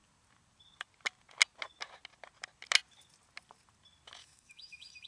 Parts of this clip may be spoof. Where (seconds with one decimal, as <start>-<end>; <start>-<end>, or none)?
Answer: 4.2-5.1